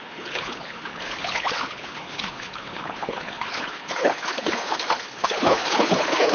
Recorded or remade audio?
remade